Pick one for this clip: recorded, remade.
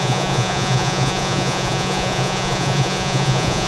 remade